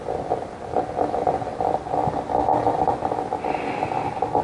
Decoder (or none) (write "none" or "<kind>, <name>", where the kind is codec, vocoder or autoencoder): none